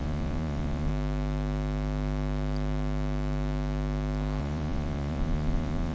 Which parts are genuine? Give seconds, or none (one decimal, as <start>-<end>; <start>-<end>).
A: 0.9-4.4